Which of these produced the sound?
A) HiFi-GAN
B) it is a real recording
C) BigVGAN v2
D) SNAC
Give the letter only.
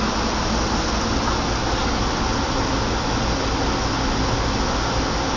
B